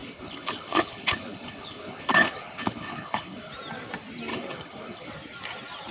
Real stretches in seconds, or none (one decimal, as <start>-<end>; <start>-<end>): 3.5-4.3; 5.1-5.9